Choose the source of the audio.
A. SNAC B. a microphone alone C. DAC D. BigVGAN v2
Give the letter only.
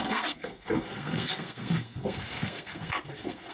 A